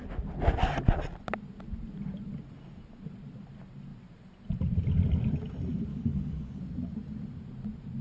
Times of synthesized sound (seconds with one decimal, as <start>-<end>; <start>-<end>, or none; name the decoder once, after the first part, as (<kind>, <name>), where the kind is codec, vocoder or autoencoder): 5.9-6.6 (codec, DAC)